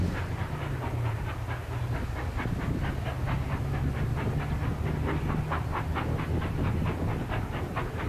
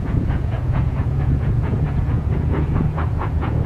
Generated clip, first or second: second